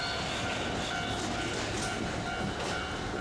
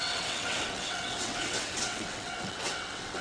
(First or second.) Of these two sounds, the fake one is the second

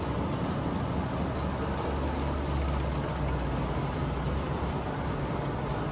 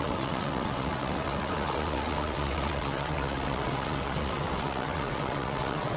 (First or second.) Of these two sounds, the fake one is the second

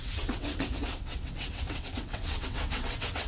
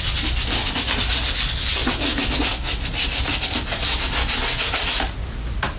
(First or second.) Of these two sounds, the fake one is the first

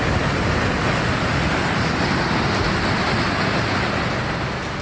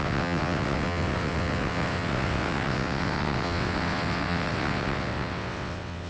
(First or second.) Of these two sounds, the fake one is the second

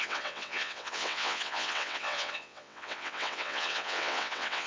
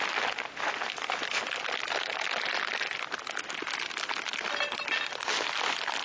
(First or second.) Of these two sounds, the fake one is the first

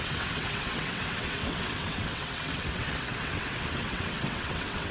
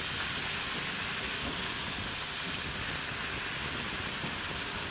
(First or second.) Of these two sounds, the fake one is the first